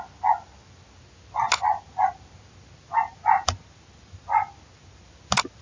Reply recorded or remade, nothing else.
recorded